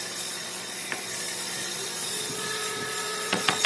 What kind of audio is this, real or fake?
fake